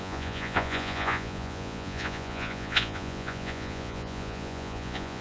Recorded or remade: remade